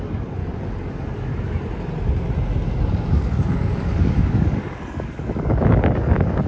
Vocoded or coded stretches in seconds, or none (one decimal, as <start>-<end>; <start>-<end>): 0.0-0.4; 0.9-1.3; 2.9-6.5